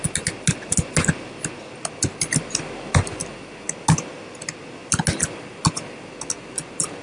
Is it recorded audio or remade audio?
recorded